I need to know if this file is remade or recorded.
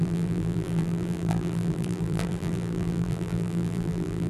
remade